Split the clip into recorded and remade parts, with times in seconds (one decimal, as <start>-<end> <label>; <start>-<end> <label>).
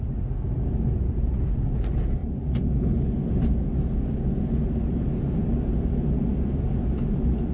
0.0-7.5 recorded